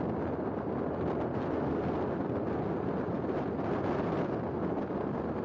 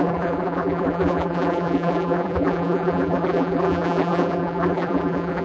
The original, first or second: first